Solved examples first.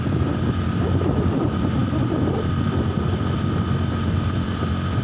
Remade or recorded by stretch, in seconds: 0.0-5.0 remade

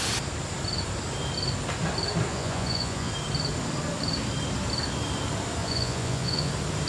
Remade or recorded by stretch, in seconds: 0.0-2.3 recorded; 2.3-3.1 remade; 3.1-5.6 recorded; 5.6-6.5 remade; 6.5-6.9 recorded

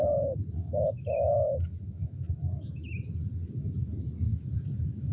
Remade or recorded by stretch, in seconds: 0.0-0.6 recorded; 0.6-3.1 remade; 3.1-4.3 recorded; 4.3-5.1 remade

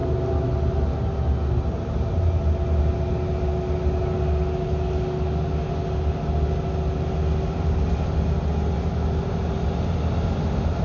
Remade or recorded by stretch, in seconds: 0.0-10.8 recorded

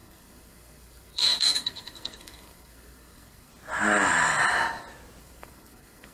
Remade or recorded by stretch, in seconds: 0.0-3.5 remade; 3.5-5.2 recorded; 5.2-6.1 remade

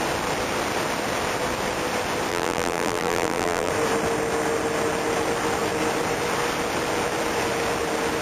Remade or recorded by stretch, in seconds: 0.0-2.3 recorded; 2.3-3.7 remade; 3.7-8.2 recorded